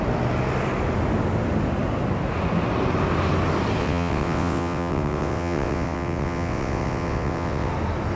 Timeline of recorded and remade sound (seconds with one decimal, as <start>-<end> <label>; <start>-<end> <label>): 0.0-3.8 recorded; 3.8-7.7 remade; 7.7-8.2 recorded